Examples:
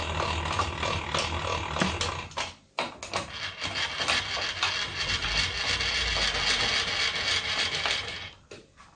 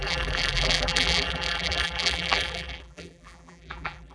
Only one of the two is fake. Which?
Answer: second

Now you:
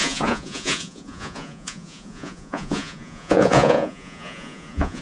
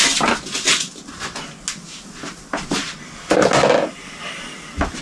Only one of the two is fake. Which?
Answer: first